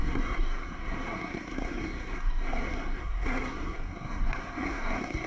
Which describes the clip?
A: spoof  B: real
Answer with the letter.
A